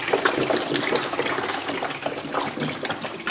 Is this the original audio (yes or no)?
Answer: yes